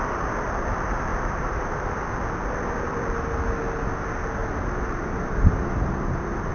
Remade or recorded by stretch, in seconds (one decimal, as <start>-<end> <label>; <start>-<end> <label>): 0.0-1.1 recorded; 1.1-2.0 remade; 2.0-4.4 recorded; 4.4-6.5 remade